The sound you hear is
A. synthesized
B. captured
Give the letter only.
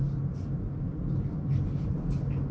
B